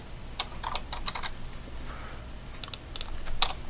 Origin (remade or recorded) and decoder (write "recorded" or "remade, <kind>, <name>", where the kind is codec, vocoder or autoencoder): recorded